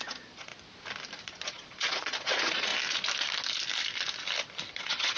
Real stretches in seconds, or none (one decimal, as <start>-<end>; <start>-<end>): 0.5-1.2; 2.7-4.7